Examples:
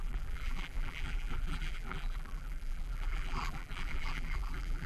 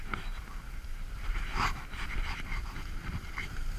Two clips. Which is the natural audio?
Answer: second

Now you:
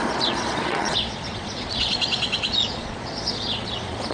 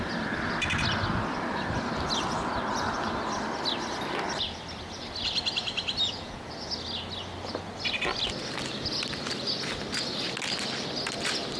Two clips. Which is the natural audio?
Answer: second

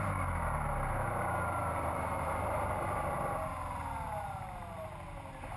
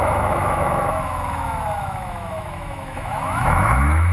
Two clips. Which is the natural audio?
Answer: first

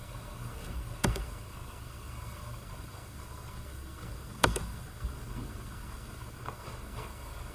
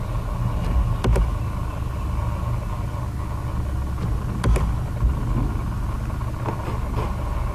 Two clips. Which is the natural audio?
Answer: second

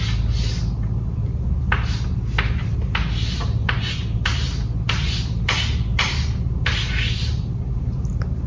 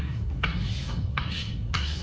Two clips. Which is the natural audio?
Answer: first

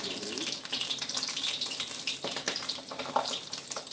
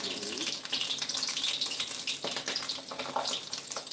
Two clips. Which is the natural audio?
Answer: second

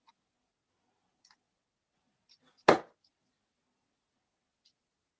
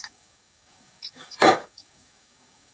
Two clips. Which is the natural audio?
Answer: first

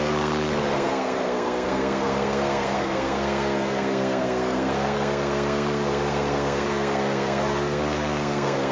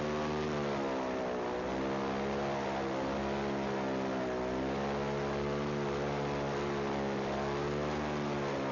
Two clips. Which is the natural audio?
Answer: second